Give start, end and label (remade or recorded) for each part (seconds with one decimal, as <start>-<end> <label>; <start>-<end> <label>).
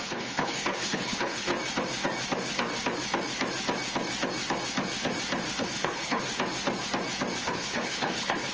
0.0-1.5 remade; 1.5-5.6 recorded; 5.6-6.3 remade; 6.3-7.4 recorded; 7.4-8.5 remade